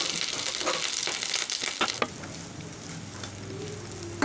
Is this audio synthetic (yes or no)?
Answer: no